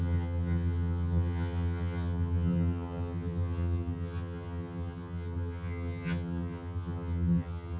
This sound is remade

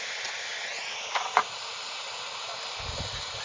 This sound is recorded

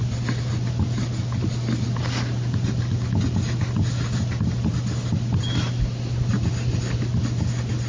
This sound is recorded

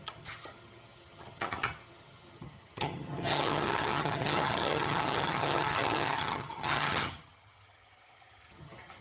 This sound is remade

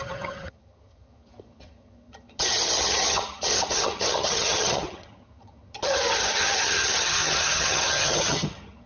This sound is remade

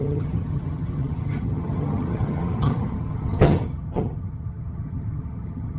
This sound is remade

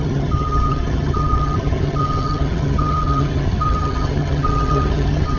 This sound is remade